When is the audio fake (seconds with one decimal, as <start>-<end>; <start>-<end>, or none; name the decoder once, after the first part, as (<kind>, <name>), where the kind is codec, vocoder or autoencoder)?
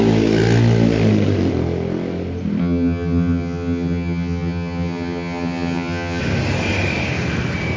2.6-6.2 (vocoder, HiFi-GAN)